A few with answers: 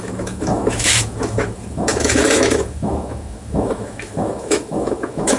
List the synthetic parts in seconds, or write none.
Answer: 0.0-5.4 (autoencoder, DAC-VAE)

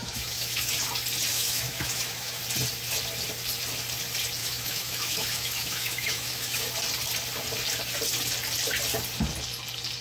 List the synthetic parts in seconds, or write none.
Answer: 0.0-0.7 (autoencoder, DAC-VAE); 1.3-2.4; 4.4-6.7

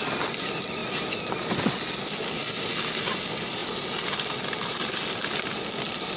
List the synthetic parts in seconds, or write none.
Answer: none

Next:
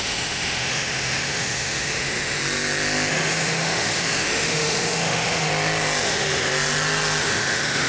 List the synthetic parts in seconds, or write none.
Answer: 0.0-2.4 (autoencoder, DAC-VAE); 3.1-5.5; 6.0-6.5; 7.2-7.9